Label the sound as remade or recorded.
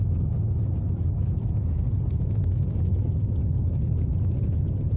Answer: remade